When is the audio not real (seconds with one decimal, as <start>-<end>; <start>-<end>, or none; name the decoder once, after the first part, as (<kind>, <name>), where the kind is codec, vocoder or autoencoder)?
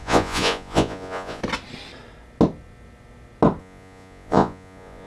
0.0-1.4 (vocoder, Vocos); 3.6-5.1